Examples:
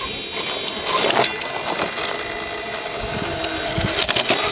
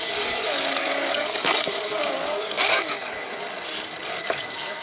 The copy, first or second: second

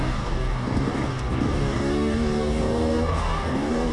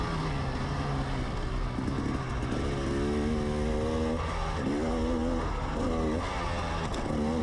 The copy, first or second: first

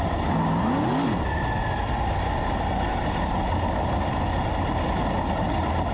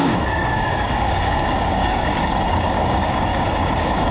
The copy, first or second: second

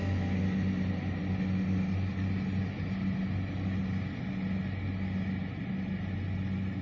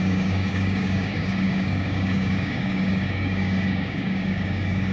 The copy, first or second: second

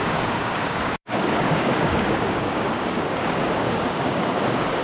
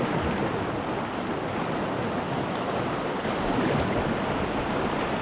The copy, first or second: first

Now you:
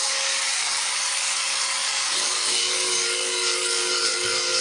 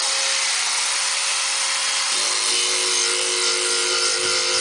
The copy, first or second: first